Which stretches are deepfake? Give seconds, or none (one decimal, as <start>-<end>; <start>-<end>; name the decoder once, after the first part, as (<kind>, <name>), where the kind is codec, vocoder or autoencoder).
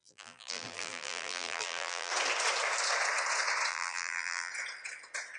0.0-2.1 (vocoder, BigVGAN v2); 3.7-4.5